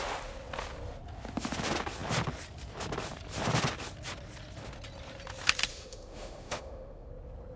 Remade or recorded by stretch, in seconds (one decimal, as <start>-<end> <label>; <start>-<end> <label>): 0.0-5.7 recorded; 5.7-7.1 remade; 7.1-7.6 recorded